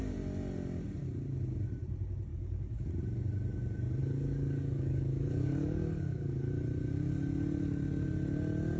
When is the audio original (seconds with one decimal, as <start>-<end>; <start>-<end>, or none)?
0.0-2.3; 2.9-4.0; 6.5-8.8

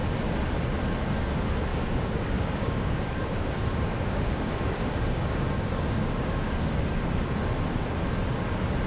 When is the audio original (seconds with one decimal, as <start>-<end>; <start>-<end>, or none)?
0.0-1.7; 6.8-8.9

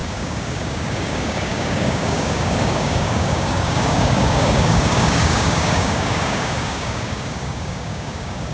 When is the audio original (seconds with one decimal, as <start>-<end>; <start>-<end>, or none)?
none

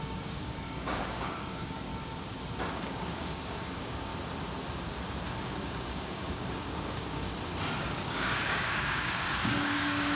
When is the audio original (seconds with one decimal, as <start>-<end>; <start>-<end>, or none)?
1.9-2.7; 4.1-5.4; 7.3-7.8

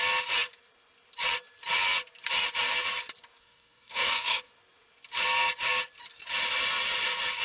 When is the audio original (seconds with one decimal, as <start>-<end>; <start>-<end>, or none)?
0.0-3.4; 4.5-7.4

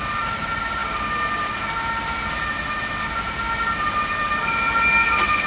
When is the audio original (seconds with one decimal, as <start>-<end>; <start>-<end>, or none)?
0.0-5.5

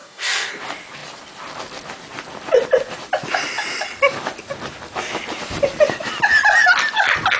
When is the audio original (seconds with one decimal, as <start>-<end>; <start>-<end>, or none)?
0.5-7.4

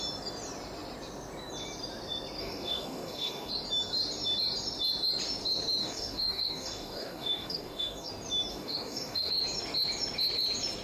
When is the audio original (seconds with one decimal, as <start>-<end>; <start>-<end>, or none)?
0.0-2.4; 3.5-5.8; 8.1-8.5; 9.3-10.8